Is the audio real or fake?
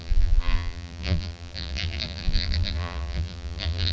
fake